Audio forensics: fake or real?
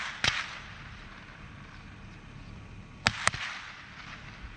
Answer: real